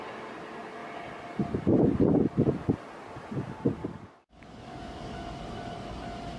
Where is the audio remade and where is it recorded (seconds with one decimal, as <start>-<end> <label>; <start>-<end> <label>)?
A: 0.0-3.8 recorded; 3.8-5.2 remade; 5.2-6.4 recorded